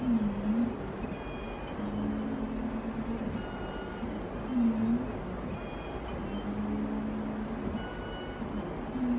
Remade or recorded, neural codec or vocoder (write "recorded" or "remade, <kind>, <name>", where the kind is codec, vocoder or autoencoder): recorded